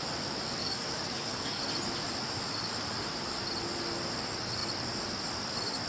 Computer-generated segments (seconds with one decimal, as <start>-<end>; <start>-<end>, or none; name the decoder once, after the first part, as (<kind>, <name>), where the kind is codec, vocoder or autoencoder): 0.6-1.6 (codec, DAC)